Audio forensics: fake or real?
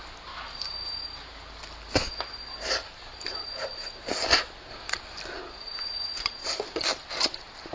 real